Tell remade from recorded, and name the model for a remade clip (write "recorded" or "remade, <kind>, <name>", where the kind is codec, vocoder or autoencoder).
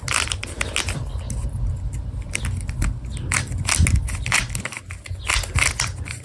recorded